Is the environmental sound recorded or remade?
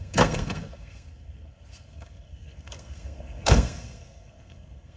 remade